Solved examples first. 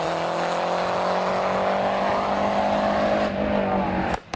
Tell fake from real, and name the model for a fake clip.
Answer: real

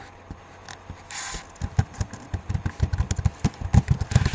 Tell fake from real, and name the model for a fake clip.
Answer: real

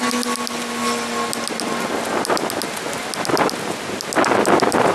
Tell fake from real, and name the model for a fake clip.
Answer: real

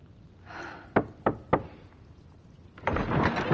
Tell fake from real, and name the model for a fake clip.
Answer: real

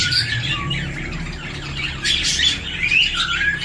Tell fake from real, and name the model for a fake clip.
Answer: real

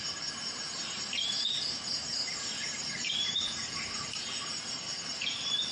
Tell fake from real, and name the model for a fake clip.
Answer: fake, vocoder, BigVGAN v2